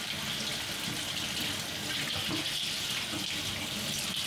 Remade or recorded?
recorded